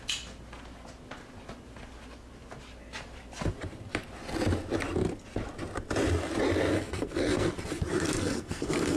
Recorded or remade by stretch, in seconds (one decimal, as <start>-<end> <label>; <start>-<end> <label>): 0.0-6.7 recorded; 6.7-7.5 remade; 7.5-7.9 recorded; 7.9-9.0 remade